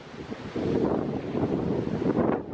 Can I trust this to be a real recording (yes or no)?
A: yes